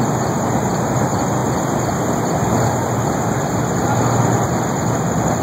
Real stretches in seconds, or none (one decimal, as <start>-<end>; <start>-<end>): 0.0-5.4